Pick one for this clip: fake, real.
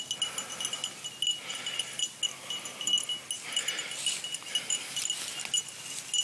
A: real